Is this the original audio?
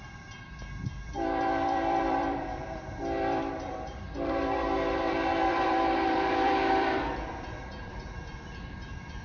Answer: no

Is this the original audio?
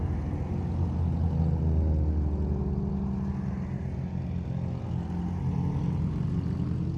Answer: yes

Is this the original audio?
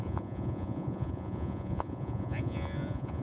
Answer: no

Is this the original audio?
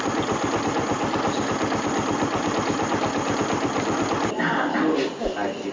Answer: yes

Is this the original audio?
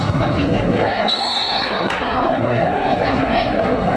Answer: no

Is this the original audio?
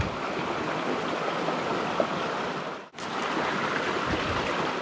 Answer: yes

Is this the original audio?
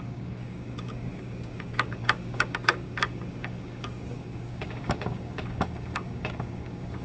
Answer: no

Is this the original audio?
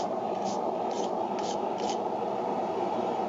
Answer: no